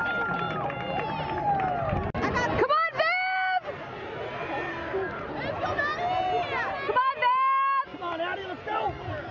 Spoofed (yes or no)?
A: no